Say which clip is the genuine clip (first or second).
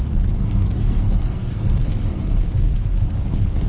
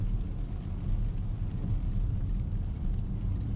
second